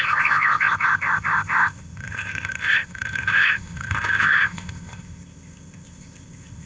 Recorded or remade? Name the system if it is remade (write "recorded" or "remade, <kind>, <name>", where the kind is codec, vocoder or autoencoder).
remade, codec, ZipCodec